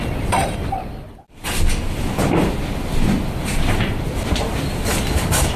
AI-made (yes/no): no